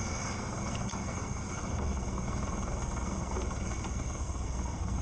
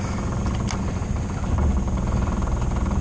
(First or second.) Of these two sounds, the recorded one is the second